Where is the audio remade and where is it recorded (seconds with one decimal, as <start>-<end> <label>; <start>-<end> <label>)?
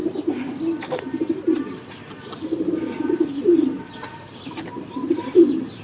0.0-3.0 recorded; 3.0-5.8 remade